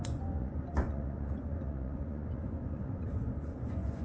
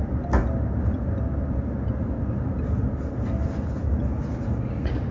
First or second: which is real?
second